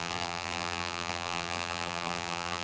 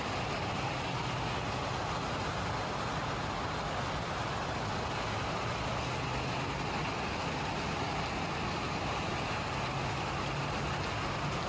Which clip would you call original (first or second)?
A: second